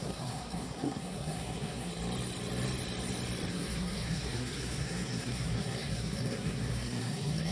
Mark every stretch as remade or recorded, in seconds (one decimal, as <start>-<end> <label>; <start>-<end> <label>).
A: 0.0-1.9 remade; 1.9-3.5 recorded; 3.5-7.5 remade